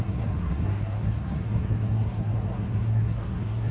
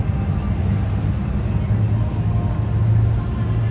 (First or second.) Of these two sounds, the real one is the second